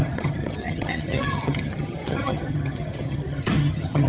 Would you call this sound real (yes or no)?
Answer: no